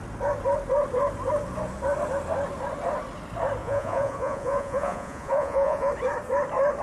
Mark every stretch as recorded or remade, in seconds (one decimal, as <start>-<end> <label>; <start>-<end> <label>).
0.0-3.6 recorded; 3.6-5.9 remade; 5.9-6.8 recorded